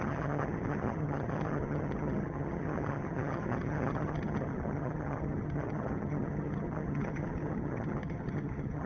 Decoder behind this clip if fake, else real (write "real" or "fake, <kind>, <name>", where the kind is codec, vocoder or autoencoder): fake, vocoder, HiFi-GAN